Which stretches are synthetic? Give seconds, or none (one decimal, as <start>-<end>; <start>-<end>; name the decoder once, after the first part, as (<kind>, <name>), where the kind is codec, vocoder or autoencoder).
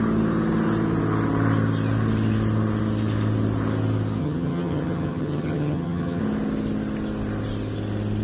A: 4.2-6.2 (vocoder, HiFi-GAN)